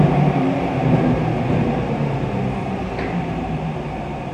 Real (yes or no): no